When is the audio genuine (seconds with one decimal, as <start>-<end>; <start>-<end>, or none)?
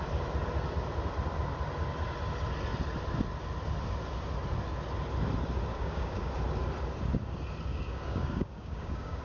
0.0-5.7; 6.3-7.7